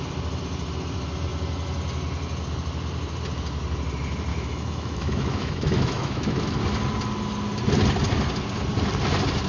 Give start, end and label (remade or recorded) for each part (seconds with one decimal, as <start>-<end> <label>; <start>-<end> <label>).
0.0-4.3 recorded; 4.3-6.6 remade; 6.6-9.5 recorded